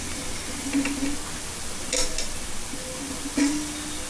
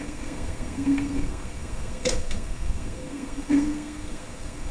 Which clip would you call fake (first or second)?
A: second